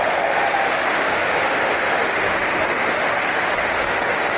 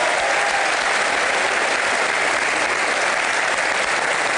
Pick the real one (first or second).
second